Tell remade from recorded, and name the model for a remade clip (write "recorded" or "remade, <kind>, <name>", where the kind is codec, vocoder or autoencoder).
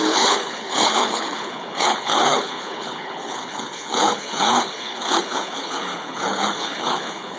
remade, codec, HILCodec